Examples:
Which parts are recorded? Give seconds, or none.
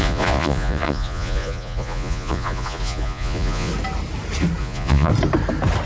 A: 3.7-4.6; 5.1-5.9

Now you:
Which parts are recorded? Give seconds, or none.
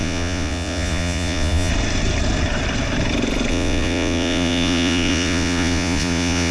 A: 1.7-3.5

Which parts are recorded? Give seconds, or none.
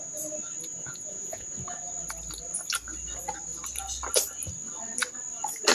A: 0.0-0.7; 1.5-5.7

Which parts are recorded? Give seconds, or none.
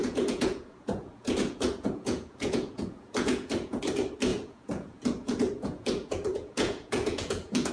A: 3.8-4.3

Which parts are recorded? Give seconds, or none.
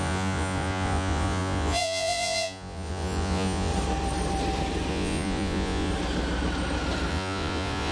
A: 3.7-4.9; 5.9-7.1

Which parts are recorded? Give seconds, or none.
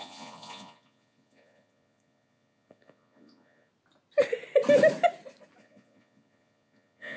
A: 3.7-5.6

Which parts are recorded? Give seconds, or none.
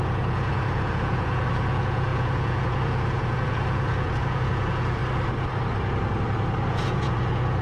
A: 5.0-6.7